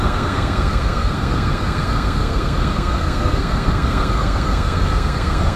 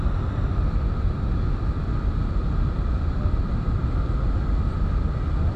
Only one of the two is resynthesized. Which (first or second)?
first